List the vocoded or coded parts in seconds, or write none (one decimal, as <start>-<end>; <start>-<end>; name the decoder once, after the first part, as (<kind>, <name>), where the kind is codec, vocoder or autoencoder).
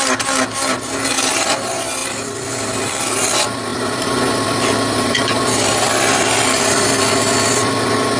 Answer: 2.0-3.0 (vocoder, BigVGAN v2); 3.7-7.7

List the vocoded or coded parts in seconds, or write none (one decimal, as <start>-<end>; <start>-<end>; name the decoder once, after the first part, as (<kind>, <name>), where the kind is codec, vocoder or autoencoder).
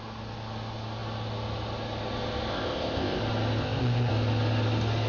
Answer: 2.5-3.2 (codec, ZipCodec); 3.6-4.1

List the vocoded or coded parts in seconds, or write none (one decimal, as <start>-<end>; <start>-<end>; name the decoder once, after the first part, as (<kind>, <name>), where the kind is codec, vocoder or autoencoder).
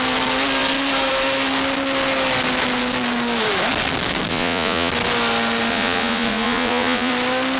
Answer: 4.3-4.9 (vocoder, Vocos); 5.7-7.1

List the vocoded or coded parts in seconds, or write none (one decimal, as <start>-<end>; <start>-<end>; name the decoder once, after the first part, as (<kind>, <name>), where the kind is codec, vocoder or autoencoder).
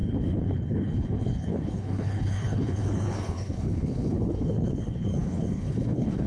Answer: 0.0-6.3 (codec, HILCodec)